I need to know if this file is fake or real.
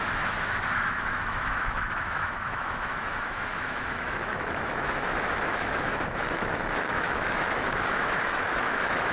fake